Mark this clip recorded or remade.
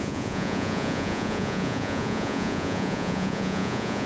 remade